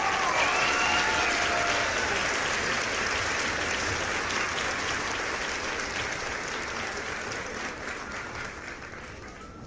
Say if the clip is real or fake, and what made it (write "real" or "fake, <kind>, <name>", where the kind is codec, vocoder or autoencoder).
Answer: real